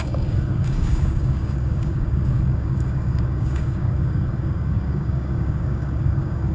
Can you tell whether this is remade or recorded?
remade